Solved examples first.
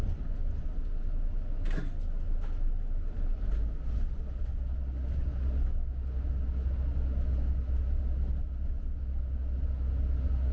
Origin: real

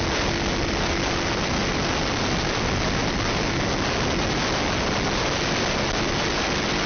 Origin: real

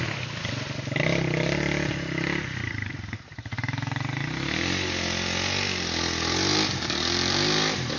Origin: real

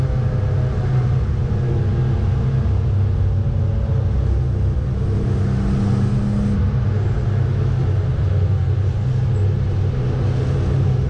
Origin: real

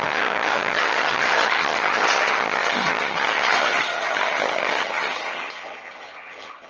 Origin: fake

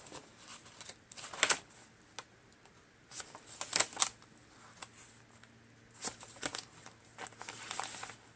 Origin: real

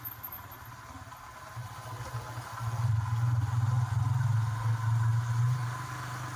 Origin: real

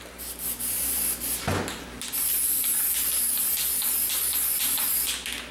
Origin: real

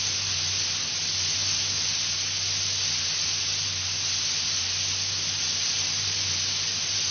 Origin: real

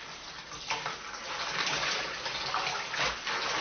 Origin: real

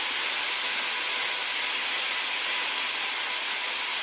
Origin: real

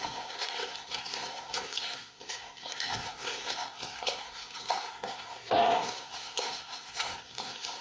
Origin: fake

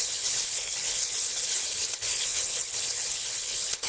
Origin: fake